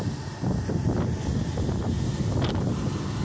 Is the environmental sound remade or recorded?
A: recorded